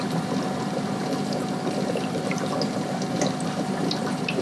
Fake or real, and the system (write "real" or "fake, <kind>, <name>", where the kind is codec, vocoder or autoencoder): fake, vocoder, BigVGAN v2